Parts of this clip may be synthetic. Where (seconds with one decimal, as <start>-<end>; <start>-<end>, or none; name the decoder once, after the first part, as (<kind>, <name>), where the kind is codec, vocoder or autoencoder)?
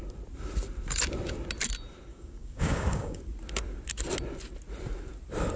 2.1-3.2 (codec, DAC)